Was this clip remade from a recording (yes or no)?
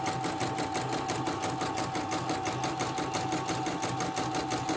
no